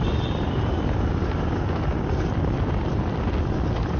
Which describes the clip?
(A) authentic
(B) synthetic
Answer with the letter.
A